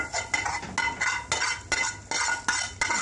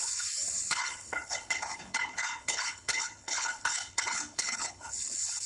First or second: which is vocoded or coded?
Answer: second